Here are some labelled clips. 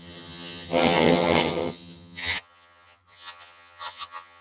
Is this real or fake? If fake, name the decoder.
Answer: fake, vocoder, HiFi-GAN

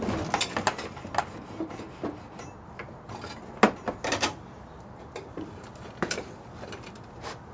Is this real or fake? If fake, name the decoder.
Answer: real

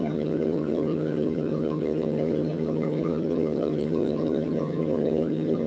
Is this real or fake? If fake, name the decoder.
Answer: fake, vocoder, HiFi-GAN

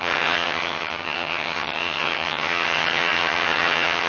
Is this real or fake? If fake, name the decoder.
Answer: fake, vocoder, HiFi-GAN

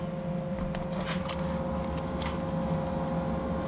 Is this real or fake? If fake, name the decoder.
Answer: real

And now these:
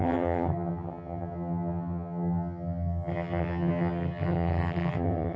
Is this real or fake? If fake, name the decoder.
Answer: fake, vocoder, HiFi-GAN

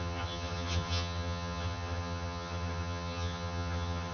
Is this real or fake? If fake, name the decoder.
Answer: fake, vocoder, HiFi-GAN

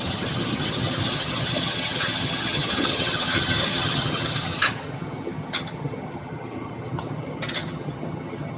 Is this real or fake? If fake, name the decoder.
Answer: fake, vocoder, HiFi-GAN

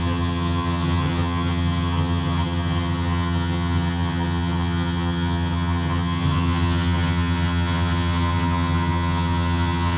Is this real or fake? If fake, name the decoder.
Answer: fake, vocoder, HiFi-GAN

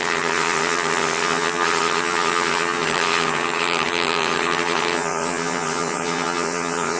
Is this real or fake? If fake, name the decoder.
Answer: fake, vocoder, HiFi-GAN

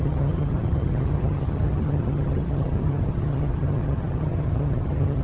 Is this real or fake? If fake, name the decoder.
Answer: fake, vocoder, HiFi-GAN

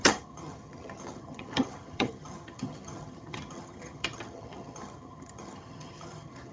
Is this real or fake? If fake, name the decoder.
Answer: fake, vocoder, HiFi-GAN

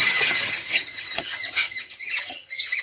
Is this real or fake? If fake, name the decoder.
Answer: fake, vocoder, HiFi-GAN